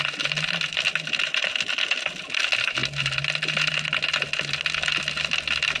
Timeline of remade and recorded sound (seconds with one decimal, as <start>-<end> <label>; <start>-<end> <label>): 0.0-5.8 recorded